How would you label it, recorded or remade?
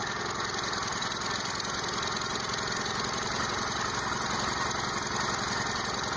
recorded